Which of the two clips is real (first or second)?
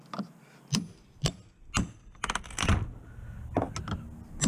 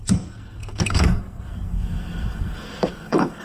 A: first